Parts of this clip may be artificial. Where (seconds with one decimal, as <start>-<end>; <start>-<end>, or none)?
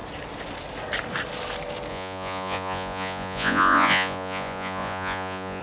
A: 1.9-5.6